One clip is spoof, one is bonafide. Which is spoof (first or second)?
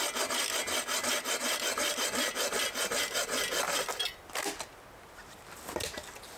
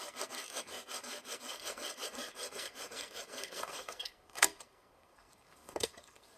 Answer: second